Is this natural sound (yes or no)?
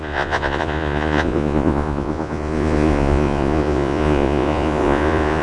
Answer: no